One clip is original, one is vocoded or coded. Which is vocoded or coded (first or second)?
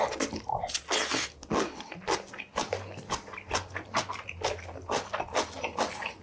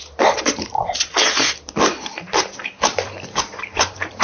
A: second